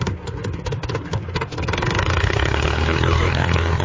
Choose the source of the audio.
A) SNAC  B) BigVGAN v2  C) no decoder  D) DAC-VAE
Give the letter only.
A